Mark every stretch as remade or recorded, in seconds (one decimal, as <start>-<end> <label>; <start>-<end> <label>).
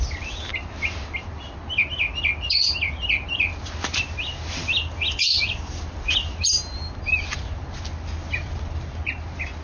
0.0-9.6 recorded